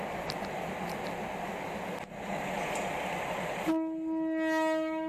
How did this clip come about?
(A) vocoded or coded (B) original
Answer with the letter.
B